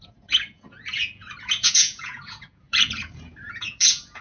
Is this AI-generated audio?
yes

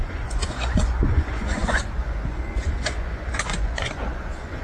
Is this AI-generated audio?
yes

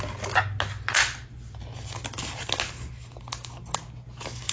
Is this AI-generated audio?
no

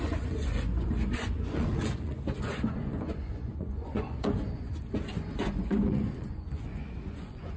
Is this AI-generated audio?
yes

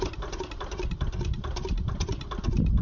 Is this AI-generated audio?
no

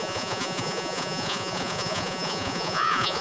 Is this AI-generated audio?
yes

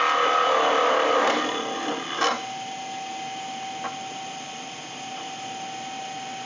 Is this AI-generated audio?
no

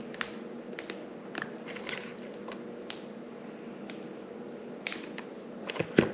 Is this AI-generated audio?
no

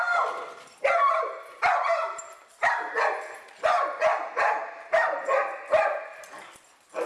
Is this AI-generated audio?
no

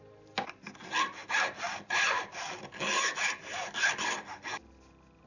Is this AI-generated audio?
no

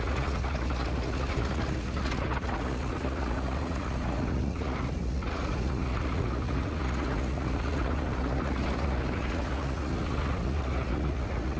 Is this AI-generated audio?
yes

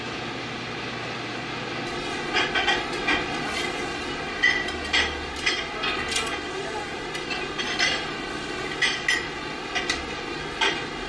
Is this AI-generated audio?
no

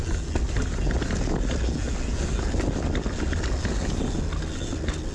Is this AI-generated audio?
no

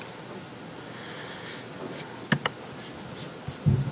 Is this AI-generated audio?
no